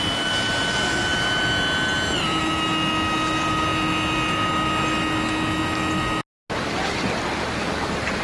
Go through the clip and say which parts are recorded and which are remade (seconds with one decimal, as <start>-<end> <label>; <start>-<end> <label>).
0.0-8.2 recorded